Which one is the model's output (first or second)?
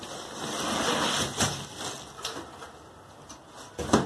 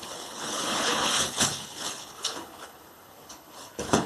second